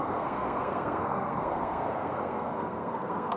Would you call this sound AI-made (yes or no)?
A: yes